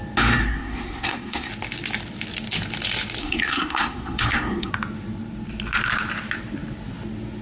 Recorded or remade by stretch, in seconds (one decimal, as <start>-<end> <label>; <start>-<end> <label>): 0.0-0.4 recorded; 0.4-1.5 remade; 1.5-3.2 recorded; 3.2-4.7 remade; 4.7-7.4 recorded